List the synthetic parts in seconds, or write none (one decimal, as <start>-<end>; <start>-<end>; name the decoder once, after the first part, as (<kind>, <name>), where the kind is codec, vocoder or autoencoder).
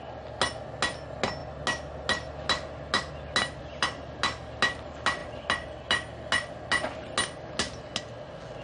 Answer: none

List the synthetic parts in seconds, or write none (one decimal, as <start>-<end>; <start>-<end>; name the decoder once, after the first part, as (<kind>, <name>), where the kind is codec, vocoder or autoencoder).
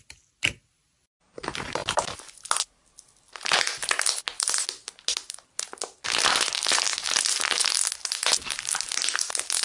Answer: none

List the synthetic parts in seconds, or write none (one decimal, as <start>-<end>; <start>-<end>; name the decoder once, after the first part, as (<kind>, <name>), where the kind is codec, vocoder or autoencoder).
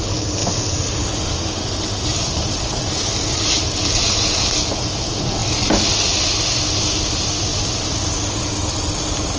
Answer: 0.4-4.0 (vocoder, BigVGAN v2); 5.4-6.4; 7.5-9.4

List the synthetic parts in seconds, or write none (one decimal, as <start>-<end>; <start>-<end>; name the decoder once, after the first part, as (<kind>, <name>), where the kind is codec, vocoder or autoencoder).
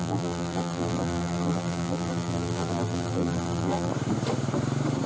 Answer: 0.0-3.9 (vocoder, BigVGAN v2)